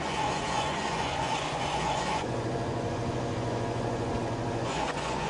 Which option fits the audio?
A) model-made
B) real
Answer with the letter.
A